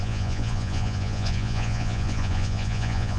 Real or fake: fake